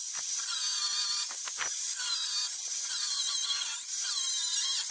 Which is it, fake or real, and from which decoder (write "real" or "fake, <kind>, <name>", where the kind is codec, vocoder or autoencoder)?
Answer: fake, vocoder, BigVGAN v2